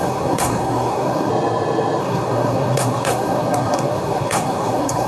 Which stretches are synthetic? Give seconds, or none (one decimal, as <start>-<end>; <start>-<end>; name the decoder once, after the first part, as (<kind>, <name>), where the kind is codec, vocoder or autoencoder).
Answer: 0.0-1.3 (codec, SNAC); 2.0-5.1